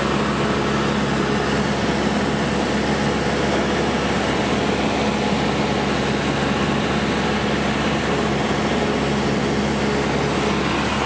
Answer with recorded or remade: recorded